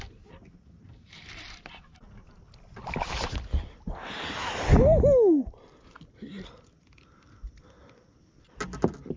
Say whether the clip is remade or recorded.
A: recorded